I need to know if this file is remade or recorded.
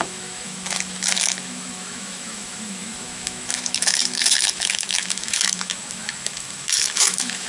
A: remade